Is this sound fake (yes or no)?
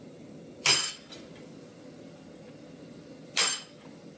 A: no